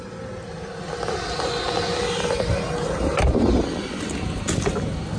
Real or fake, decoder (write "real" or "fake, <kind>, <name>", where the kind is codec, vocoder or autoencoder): real